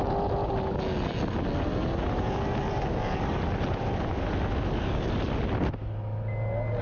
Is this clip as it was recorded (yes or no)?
yes